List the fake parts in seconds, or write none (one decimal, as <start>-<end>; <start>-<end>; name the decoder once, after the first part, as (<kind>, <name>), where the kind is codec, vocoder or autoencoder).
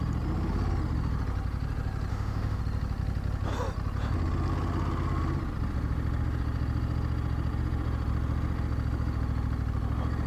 2.1-2.6 (autoencoder, DAC-VAE)